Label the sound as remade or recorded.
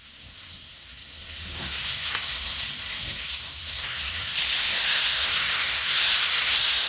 remade